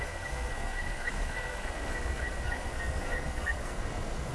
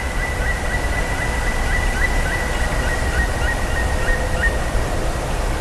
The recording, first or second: second